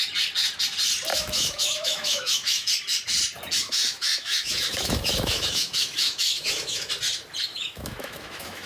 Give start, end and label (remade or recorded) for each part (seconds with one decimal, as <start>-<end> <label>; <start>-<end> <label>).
0.0-1.1 recorded; 1.1-2.7 remade; 2.7-3.6 recorded; 3.6-6.9 remade; 6.9-7.5 recorded; 7.5-8.7 remade